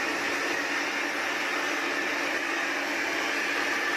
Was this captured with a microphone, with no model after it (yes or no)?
yes